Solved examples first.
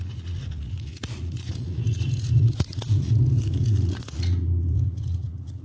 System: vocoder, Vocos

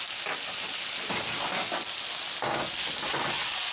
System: none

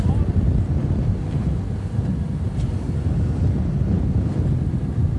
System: none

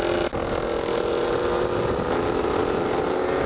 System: none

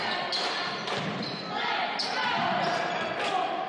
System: none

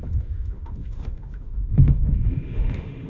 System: autoencoder, DAC-VAE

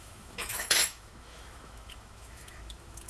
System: autoencoder, DAC-VAE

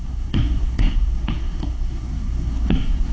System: codec, SNAC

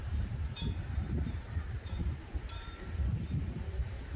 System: vocoder, BigVGAN v2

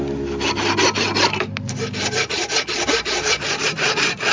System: none